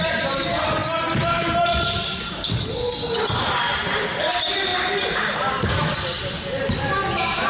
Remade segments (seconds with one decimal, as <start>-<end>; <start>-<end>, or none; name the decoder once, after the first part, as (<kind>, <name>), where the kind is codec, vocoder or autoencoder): none